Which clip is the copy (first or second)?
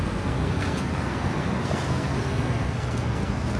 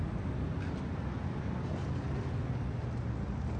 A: first